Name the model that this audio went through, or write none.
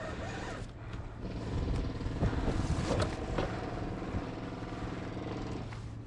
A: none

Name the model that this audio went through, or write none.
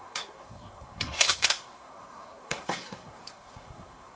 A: codec, SNAC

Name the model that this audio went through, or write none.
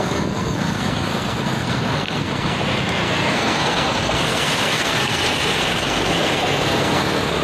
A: codec, SNAC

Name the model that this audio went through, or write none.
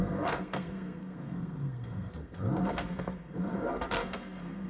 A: codec, SNAC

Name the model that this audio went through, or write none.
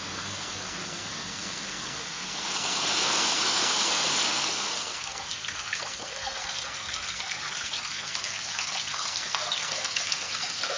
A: codec, SNAC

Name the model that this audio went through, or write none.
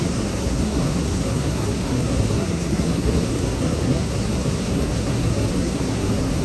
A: codec, SNAC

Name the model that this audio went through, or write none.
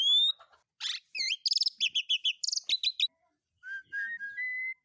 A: none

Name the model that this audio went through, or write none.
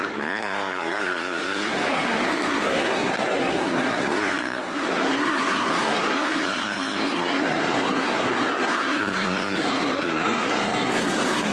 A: codec, SNAC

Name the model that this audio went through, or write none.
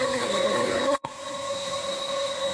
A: codec, SNAC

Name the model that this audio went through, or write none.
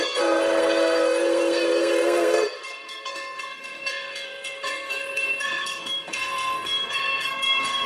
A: codec, SNAC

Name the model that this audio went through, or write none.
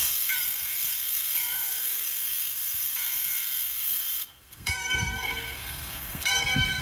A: codec, SNAC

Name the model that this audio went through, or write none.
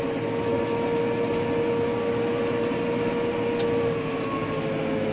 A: none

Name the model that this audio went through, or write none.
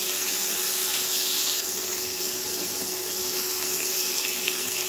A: codec, SNAC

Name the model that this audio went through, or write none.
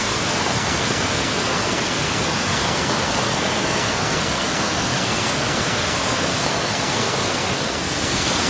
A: codec, SNAC